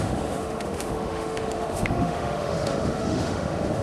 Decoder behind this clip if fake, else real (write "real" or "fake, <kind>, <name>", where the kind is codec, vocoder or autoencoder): fake, autoencoder, DAC-VAE